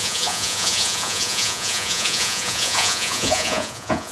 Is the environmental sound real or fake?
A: fake